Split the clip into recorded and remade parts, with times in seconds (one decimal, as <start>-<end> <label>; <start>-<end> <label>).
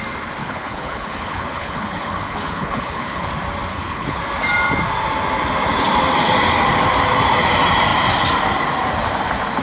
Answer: 0.0-0.4 recorded; 0.4-3.3 remade; 3.3-3.7 recorded; 3.7-4.2 remade; 4.2-9.6 recorded